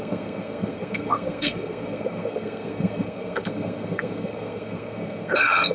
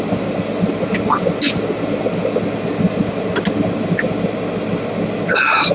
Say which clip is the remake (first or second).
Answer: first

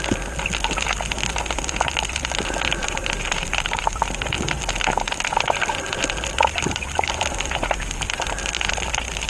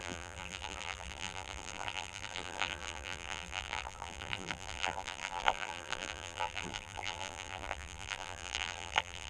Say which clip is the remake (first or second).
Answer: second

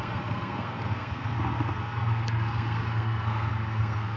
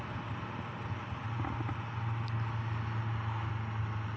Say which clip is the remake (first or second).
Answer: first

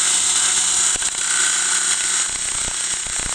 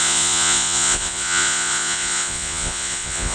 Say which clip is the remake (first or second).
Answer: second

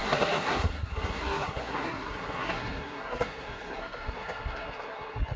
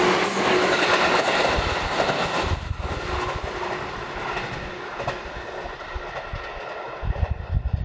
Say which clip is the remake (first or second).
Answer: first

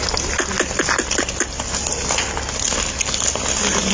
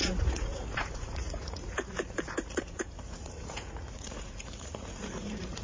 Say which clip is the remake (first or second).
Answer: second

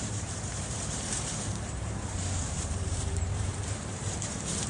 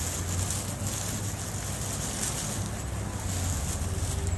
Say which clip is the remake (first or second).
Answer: first